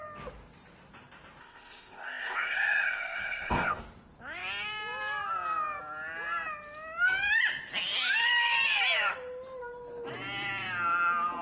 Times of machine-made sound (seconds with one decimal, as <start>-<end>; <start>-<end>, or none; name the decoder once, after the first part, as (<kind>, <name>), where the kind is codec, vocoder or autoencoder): 1.4-3.8 (codec, ZipCodec)